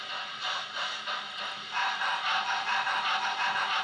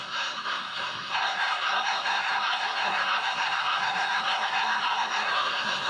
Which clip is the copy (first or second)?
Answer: second